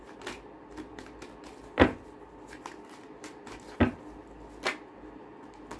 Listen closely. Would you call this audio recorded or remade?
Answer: recorded